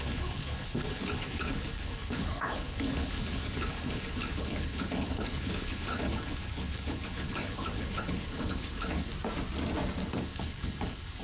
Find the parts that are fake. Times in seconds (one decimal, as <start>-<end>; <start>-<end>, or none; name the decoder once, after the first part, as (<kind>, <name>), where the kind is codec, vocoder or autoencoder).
0.0-9.1 (codec, HILCodec); 10.2-11.2